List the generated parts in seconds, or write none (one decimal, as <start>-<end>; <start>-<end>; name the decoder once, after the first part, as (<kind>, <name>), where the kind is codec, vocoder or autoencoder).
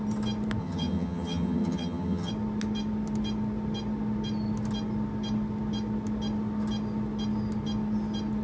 0.6-2.3 (vocoder, HiFi-GAN)